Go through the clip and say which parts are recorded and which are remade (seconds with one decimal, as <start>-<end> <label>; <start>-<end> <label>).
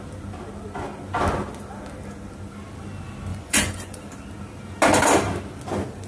0.0-3.3 recorded; 3.3-4.0 remade; 4.0-6.1 recorded